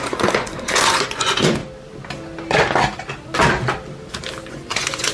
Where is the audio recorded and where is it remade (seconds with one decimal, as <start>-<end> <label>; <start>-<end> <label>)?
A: 0.0-1.6 remade; 1.6-4.5 recorded; 4.5-5.1 remade